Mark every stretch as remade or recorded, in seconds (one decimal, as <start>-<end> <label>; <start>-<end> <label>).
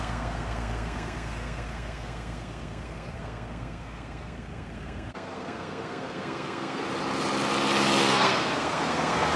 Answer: 0.0-6.8 remade; 6.8-8.0 recorded; 8.0-9.4 remade